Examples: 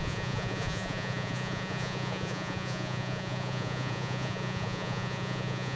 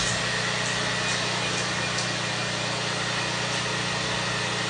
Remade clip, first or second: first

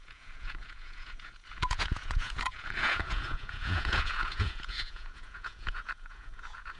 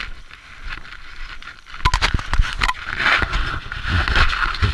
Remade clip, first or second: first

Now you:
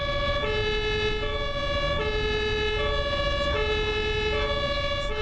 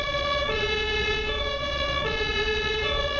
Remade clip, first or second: second